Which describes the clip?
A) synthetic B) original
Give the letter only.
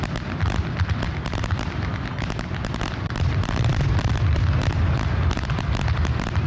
B